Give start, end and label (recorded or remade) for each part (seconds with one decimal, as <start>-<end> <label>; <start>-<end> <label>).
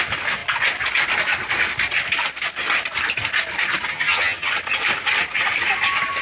0.0-3.9 recorded; 3.9-4.5 remade; 4.5-6.2 recorded